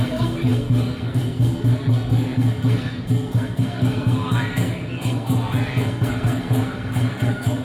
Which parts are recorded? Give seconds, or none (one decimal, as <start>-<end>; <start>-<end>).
none